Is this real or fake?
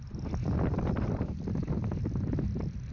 real